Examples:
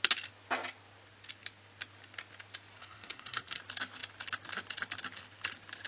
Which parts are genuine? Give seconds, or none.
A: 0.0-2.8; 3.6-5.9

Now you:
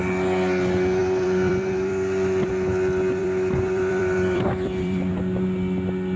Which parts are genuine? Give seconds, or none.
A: 0.0-1.0; 2.5-3.2; 5.1-6.2